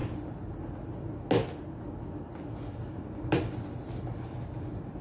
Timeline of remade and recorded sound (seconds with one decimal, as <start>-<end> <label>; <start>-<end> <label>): 0.0-5.0 recorded